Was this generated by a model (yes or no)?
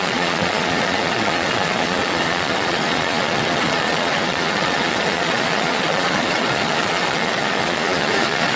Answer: yes